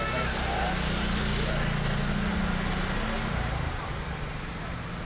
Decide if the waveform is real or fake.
real